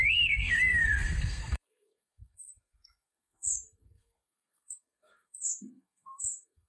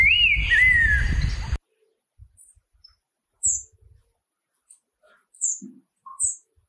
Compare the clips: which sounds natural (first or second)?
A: second